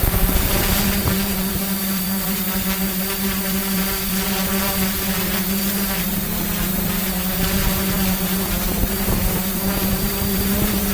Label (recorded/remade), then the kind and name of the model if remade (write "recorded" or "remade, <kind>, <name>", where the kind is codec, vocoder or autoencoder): remade, vocoder, BigVGAN v2